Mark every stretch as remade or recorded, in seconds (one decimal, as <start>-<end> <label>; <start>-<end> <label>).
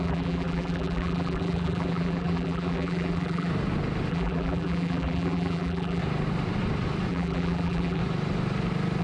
0.0-3.5 remade; 3.5-4.1 recorded; 4.1-6.0 remade; 6.0-7.1 recorded; 7.1-8.0 remade; 8.0-9.0 recorded